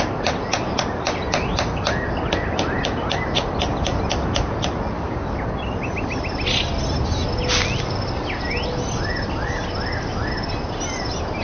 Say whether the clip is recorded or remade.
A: recorded